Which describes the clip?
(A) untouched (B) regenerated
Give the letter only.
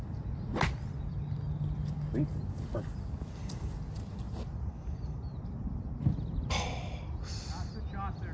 A